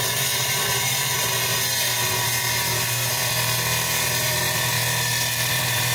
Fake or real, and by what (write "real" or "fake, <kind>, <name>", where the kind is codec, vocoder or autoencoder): fake, vocoder, BigVGAN v2